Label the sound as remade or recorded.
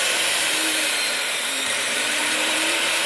remade